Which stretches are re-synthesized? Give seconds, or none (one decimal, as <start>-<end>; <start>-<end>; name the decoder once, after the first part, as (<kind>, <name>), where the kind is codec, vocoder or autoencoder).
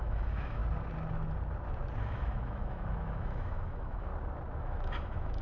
0.0-0.6 (autoencoder, DAC-VAE); 2.0-4.1; 4.6-5.4